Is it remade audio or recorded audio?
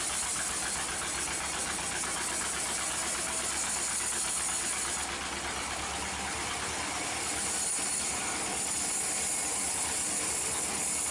recorded